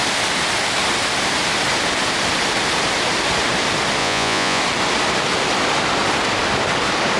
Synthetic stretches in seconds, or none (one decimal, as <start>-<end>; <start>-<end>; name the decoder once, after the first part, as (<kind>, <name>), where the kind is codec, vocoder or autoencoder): 4.0-4.6 (vocoder, Vocos)